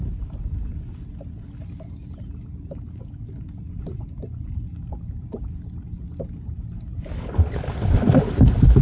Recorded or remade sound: recorded